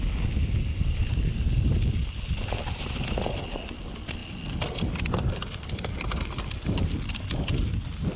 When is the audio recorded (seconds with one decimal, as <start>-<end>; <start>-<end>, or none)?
0.0-8.2